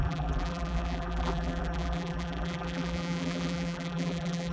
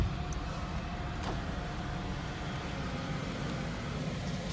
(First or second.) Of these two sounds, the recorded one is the second